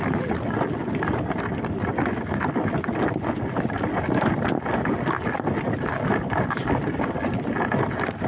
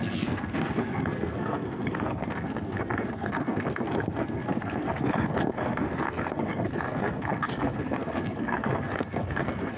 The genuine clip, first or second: first